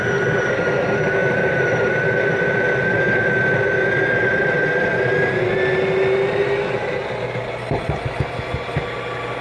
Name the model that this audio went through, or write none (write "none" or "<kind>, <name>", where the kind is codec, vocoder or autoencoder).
none